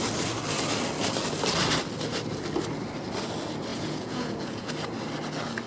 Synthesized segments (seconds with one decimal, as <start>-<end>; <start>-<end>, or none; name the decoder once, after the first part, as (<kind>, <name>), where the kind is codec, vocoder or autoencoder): 3.7-4.7 (vocoder, Vocos)